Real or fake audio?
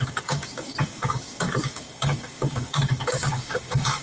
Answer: fake